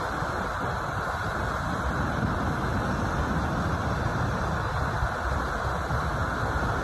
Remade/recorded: recorded